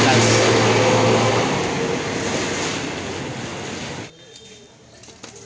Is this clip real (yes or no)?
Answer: yes